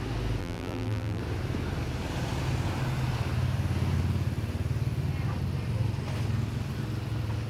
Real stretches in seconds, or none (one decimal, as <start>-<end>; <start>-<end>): 0.0-0.4; 1.2-7.5